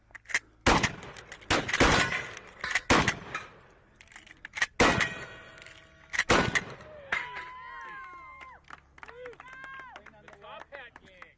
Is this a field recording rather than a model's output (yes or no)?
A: yes